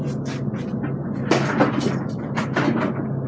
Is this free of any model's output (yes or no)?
yes